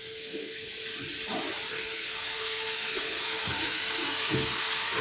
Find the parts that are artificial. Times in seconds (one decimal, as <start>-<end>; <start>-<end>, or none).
0.0-0.7; 1.7-5.0